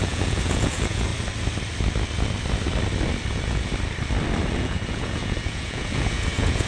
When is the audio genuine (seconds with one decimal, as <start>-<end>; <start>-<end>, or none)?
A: 1.1-3.3; 3.7-4.5